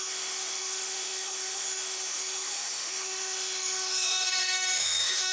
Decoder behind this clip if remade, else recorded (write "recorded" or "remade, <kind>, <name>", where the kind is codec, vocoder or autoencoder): remade, autoencoder, DAC-VAE